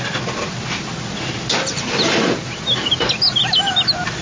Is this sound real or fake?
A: real